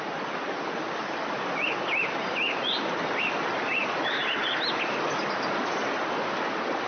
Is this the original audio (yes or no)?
yes